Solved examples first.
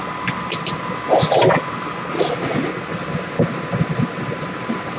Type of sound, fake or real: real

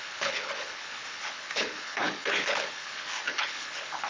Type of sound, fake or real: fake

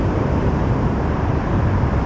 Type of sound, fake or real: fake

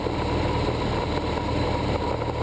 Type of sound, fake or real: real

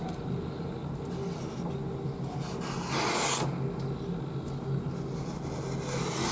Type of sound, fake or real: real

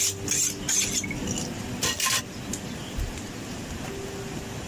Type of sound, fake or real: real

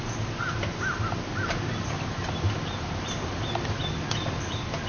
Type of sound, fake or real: real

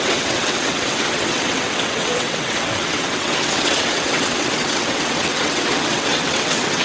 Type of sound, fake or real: fake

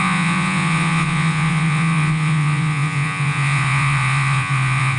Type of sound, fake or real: fake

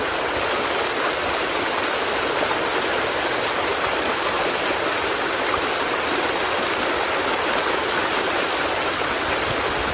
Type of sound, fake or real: real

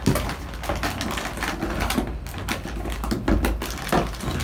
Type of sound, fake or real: real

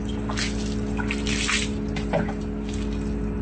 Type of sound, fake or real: real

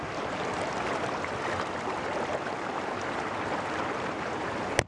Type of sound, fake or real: fake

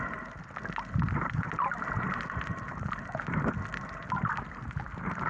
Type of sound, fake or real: real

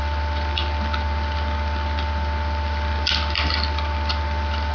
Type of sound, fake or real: real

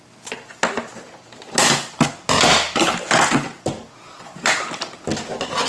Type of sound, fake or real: real